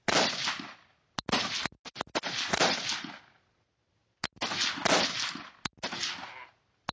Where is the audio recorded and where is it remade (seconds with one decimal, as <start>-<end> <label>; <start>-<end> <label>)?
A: 0.0-6.9 recorded